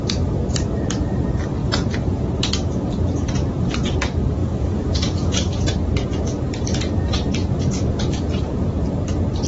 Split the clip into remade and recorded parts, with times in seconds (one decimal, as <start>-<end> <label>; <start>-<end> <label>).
0.0-1.6 recorded; 1.6-2.3 remade; 2.3-4.4 recorded; 4.4-5.7 remade; 5.7-7.4 recorded; 7.4-8.8 remade; 8.8-9.5 recorded